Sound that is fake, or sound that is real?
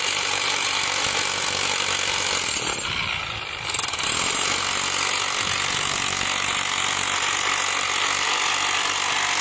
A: real